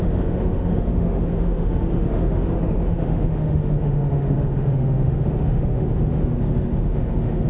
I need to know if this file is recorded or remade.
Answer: remade